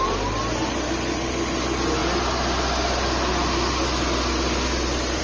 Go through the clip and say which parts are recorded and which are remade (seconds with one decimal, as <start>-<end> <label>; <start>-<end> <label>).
0.0-5.2 recorded

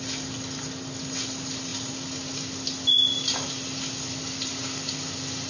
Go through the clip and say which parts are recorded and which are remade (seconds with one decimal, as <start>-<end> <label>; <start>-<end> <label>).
0.0-5.5 recorded

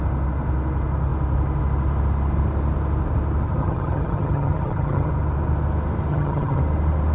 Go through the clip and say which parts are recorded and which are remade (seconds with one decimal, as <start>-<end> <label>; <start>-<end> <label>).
0.0-3.6 recorded; 3.6-5.1 remade; 5.1-6.1 recorded; 6.1-6.6 remade; 6.6-7.1 recorded

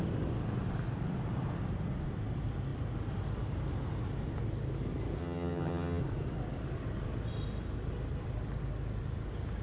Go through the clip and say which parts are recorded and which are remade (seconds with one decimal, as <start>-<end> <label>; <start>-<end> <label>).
0.0-5.2 recorded; 5.2-6.0 remade; 6.0-9.6 recorded